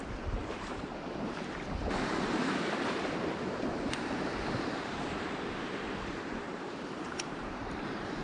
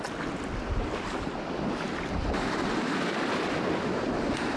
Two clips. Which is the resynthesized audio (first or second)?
first